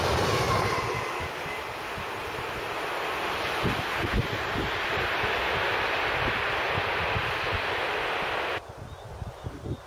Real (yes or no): yes